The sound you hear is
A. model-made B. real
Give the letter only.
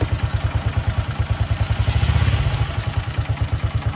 B